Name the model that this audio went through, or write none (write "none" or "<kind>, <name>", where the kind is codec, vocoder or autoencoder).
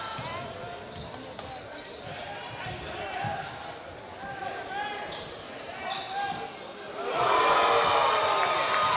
none